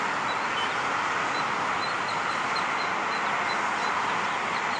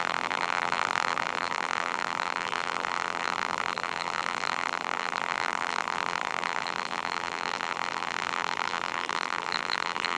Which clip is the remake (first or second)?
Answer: second